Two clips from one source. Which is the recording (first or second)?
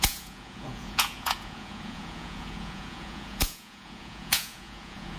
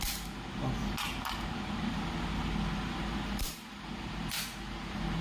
second